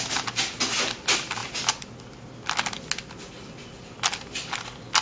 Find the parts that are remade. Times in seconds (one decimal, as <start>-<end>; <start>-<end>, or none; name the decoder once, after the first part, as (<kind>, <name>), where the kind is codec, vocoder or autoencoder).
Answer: none